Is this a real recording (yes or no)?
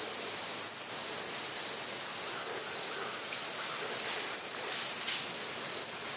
yes